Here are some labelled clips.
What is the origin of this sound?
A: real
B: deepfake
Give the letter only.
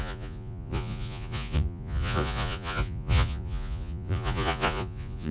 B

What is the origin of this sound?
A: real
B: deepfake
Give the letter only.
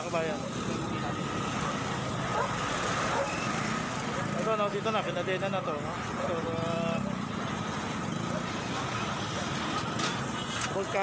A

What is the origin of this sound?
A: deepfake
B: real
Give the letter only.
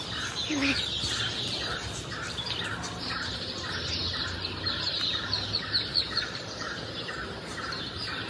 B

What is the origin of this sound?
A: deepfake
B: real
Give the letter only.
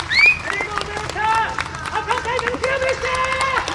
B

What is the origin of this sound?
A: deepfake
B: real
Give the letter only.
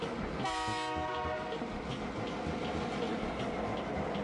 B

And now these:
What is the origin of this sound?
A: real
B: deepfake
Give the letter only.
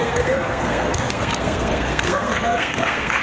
B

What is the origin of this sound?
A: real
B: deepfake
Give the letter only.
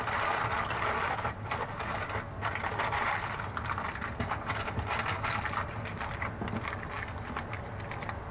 A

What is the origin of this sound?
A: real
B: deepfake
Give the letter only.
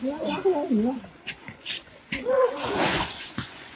B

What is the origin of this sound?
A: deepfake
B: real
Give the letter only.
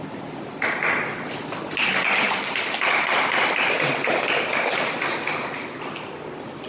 B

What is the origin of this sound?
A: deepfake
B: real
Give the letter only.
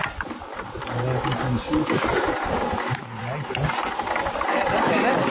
B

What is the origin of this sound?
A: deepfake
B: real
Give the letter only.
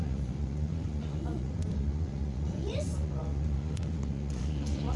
A